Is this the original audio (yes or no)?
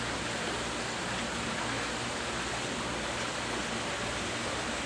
yes